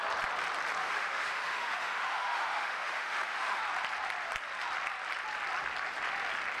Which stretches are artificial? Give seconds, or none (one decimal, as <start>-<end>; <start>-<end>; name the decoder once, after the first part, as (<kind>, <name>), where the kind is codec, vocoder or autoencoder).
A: 0.8-3.6 (autoencoder, DAC-VAE)

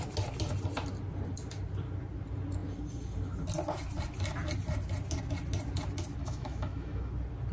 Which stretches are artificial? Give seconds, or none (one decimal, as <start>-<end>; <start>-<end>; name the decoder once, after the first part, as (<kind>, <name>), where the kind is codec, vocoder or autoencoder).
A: 6.2-7.1 (autoencoder, DAC-VAE)

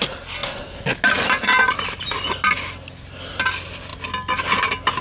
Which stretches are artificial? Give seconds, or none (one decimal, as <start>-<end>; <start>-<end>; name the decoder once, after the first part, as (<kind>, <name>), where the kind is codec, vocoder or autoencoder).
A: none

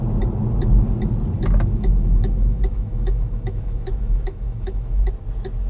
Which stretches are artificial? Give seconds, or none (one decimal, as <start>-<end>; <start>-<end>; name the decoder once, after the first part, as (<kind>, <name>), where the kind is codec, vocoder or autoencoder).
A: 1.7-5.1 (autoencoder, DAC-VAE)

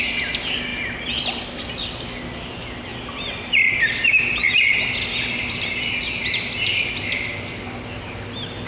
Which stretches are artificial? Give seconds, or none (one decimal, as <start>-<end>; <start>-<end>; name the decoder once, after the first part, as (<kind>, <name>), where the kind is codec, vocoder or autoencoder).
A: none

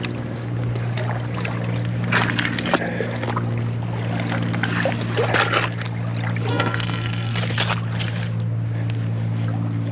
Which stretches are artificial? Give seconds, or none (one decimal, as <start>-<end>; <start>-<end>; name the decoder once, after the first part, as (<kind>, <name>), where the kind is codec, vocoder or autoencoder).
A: 6.5-7.4 (codec, SNAC)

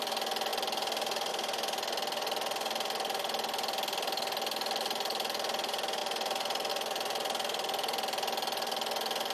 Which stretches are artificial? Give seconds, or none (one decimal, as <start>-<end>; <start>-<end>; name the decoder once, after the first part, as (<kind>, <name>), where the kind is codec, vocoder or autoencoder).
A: none